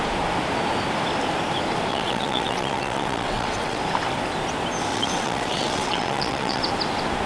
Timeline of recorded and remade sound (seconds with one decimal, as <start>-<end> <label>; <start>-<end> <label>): 0.0-1.9 recorded; 1.9-3.8 remade; 3.8-4.9 recorded; 4.9-6.6 remade; 6.6-7.3 recorded